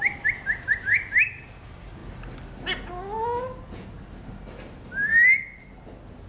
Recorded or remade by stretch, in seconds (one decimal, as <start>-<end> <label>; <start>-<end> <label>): 0.0-6.3 recorded